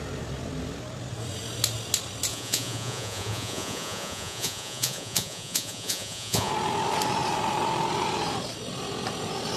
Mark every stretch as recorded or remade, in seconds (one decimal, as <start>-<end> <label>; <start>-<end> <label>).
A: 0.0-2.3 recorded; 2.3-6.5 remade; 6.5-9.6 recorded

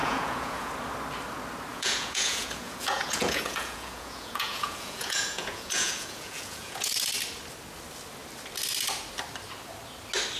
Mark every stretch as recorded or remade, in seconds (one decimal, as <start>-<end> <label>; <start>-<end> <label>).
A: 0.0-0.7 remade; 0.7-1.7 recorded; 1.7-6.9 remade; 6.9-10.4 recorded